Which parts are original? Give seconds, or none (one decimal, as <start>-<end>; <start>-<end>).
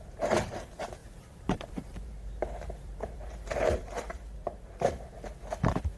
none